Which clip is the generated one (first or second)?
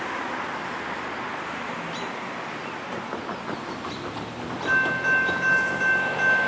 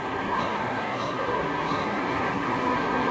second